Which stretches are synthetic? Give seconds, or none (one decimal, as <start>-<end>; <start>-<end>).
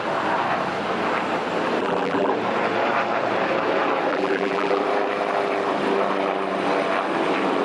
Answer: 1.8-2.3; 4.1-4.8